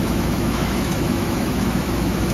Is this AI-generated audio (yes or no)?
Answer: yes